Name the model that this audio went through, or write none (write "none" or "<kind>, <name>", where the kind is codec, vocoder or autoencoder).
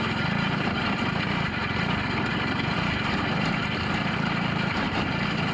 vocoder, BigVGAN v2